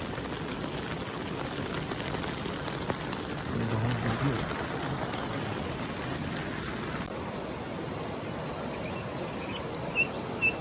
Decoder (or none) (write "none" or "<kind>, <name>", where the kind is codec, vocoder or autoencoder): none